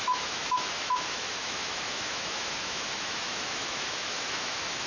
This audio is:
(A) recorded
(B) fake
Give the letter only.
B